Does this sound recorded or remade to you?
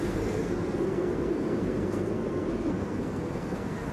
remade